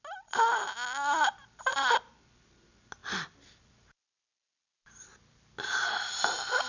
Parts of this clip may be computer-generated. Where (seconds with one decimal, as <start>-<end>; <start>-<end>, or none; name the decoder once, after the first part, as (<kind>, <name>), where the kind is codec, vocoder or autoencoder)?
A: none